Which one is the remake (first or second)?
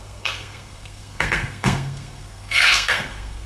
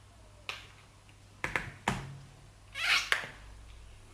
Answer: first